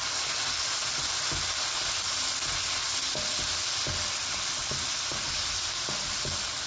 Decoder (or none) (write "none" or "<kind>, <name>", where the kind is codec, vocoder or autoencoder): none